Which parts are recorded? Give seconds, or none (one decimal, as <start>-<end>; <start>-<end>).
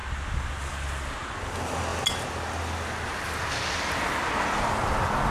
0.0-5.3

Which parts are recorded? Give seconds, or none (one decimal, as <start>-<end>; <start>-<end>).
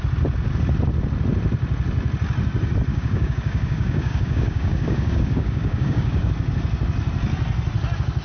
0.0-2.9; 6.3-8.2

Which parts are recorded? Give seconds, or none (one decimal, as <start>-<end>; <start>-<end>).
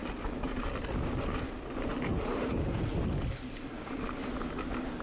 0.7-2.1; 2.9-5.0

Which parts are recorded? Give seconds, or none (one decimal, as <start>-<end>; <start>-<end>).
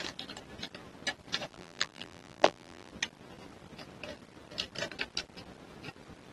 0.0-1.5; 2.9-6.3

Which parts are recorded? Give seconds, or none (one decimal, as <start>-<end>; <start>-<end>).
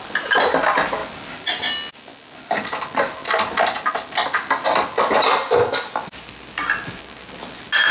0.0-7.9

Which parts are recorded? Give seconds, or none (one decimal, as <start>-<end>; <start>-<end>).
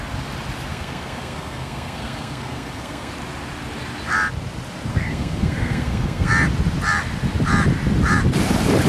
0.0-0.7; 3.1-4.9; 6.3-8.9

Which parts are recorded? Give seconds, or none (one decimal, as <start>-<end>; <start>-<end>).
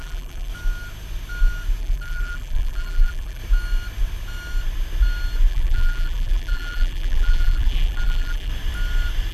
0.5-1.8; 3.4-5.5; 8.5-9.3